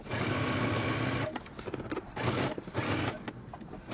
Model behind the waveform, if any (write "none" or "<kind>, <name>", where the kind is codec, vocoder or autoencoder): none